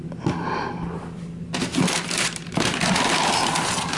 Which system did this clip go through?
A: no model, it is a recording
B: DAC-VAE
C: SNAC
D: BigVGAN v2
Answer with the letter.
A